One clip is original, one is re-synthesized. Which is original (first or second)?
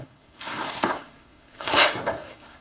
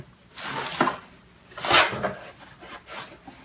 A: second